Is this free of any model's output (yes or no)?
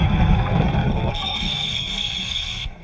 no